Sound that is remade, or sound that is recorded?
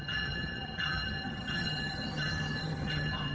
remade